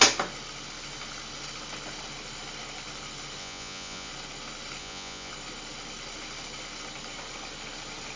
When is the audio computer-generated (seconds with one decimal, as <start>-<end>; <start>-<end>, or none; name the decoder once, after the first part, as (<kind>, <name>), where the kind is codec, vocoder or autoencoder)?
3.4-4.1 (vocoder, Vocos); 4.8-5.3